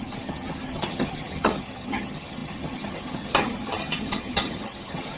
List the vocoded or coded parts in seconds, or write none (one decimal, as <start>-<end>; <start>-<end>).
0.0-5.2

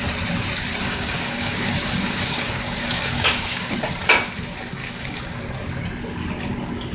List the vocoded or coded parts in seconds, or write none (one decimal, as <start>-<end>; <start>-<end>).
0.7-3.8; 4.8-5.4

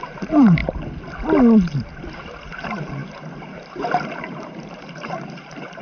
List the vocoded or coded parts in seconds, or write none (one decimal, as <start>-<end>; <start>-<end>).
0.0-0.6; 2.4-5.8

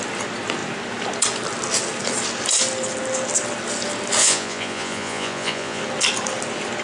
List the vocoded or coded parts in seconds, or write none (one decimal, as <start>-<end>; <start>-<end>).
4.2-5.8

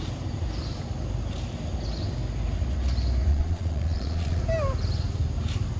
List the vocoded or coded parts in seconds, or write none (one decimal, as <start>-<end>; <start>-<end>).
3.3-4.4